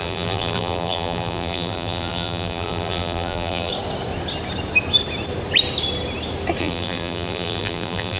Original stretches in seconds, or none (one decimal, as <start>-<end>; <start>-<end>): 3.7-6.6